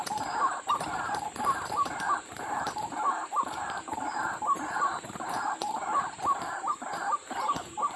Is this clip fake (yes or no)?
yes